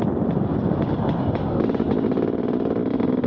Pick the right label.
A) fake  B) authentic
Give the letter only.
B